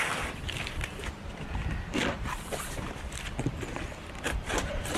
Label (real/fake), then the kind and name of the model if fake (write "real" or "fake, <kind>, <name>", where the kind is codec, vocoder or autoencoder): fake, vocoder, BigVGAN v2